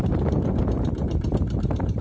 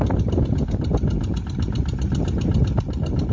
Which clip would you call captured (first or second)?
second